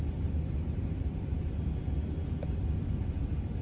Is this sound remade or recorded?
recorded